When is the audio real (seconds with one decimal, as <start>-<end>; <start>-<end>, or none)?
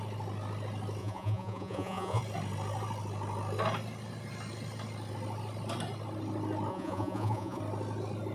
0.0-1.0; 2.2-6.7; 7.6-8.3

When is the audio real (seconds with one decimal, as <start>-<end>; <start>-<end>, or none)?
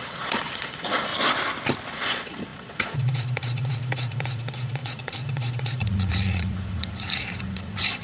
1.1-1.9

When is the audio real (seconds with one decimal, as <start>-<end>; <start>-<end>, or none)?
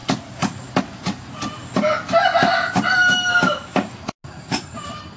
0.0-5.2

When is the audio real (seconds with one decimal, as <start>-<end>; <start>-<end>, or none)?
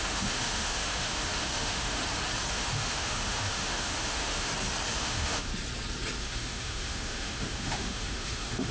2.0-2.5; 4.5-5.0; 5.5-6.2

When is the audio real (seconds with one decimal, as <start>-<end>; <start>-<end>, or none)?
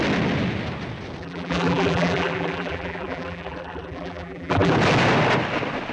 0.0-1.2; 4.7-5.9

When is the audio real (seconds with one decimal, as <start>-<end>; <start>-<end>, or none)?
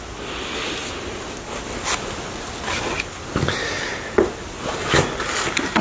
0.0-5.8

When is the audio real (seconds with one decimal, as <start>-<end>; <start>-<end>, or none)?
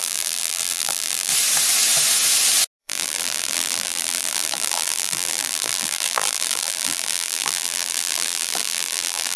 1.3-2.8